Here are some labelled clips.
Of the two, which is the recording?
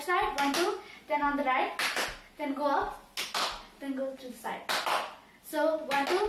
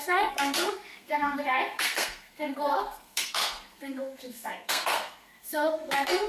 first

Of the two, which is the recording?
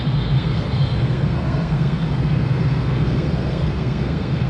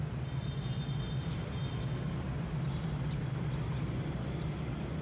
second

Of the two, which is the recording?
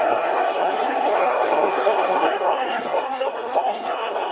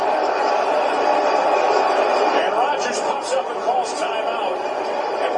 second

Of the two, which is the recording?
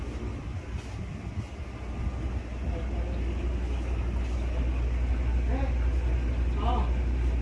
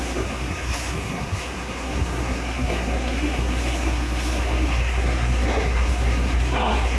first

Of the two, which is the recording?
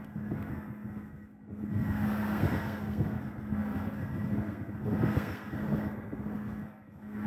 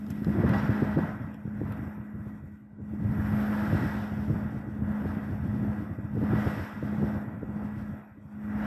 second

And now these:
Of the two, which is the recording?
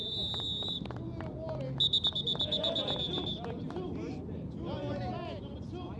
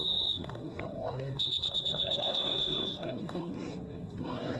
first